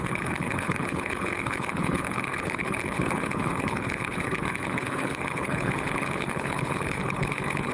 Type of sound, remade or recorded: remade